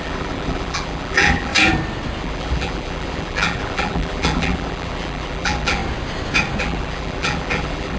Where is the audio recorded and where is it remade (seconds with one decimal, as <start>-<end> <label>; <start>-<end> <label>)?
0.0-1.5 remade; 1.5-2.2 recorded; 2.2-5.8 remade; 5.8-6.6 recorded; 6.6-8.0 remade